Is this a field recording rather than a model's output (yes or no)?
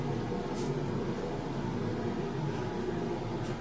yes